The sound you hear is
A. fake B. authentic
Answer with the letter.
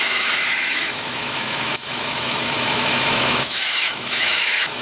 A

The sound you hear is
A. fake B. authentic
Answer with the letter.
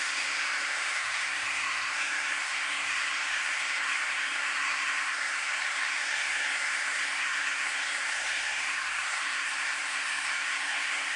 A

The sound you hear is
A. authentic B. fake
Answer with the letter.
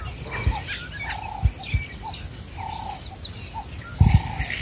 A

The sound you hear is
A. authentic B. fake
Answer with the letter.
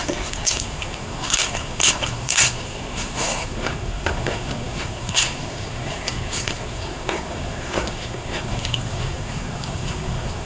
B